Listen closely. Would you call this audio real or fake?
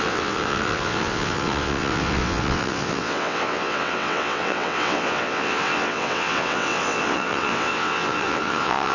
fake